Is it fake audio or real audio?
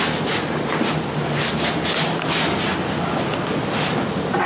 real